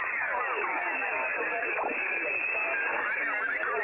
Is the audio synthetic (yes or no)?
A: no